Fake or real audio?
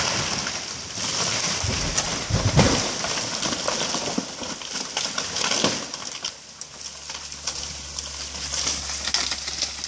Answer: real